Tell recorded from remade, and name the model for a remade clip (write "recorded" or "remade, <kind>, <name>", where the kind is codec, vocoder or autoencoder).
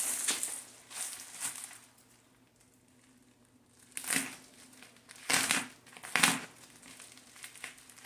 recorded